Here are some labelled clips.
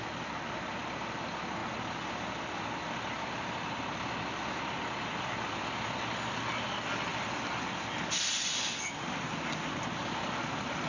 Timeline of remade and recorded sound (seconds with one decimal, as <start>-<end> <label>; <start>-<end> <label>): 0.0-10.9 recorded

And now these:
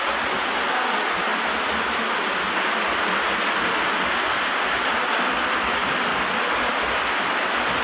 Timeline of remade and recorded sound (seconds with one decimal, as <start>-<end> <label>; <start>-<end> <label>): 0.0-7.8 recorded

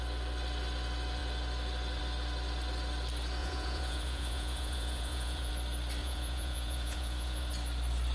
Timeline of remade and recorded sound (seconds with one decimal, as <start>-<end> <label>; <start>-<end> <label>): 0.0-3.4 recorded; 3.4-5.5 remade; 5.5-6.0 recorded; 6.0-7.5 remade; 7.5-8.1 recorded

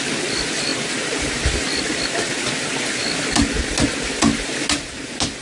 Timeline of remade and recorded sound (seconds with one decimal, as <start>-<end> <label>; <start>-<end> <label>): 0.0-5.4 recorded

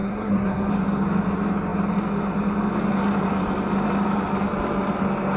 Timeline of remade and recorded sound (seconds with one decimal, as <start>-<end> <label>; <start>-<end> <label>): 0.0-0.7 remade; 0.7-5.4 recorded

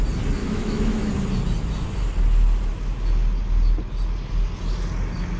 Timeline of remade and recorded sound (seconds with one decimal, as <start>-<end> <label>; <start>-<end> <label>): 0.0-0.4 recorded; 0.4-1.1 remade; 1.1-5.4 recorded